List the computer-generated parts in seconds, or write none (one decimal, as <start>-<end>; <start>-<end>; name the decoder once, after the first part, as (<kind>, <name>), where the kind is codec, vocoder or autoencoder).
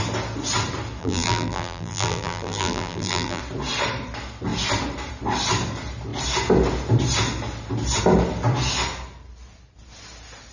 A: 1.0-3.4 (vocoder, BigVGAN v2)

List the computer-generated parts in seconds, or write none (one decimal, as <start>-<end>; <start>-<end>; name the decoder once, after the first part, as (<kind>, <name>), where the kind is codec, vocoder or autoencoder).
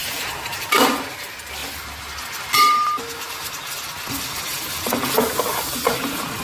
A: none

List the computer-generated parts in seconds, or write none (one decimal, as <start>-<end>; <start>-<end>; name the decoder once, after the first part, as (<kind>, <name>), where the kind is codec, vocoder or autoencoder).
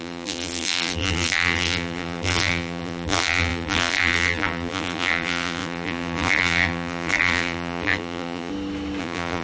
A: 0.0-8.5 (vocoder, BigVGAN v2); 9.0-9.4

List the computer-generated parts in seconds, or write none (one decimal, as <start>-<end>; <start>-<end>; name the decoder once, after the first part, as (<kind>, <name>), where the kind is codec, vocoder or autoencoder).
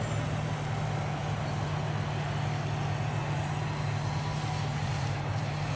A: 4.7-5.8 (vocoder, BigVGAN v2)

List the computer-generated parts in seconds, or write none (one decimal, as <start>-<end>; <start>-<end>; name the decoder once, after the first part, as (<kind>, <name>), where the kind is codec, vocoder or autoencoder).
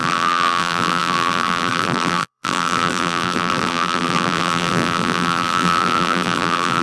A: 0.0-6.8 (vocoder, BigVGAN v2)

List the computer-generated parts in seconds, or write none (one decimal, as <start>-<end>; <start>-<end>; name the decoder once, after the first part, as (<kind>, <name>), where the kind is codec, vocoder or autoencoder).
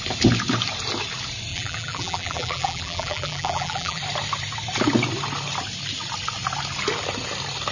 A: 1.5-4.0 (vocoder, BigVGAN v2)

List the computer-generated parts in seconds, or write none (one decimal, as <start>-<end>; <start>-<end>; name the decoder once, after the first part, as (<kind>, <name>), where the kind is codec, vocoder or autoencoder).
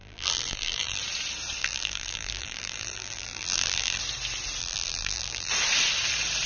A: 0.0-1.0 (vocoder, BigVGAN v2); 1.6-4.0; 4.6-5.5